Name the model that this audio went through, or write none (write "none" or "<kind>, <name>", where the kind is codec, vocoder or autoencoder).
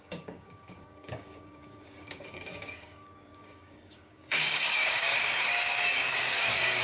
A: codec, DAC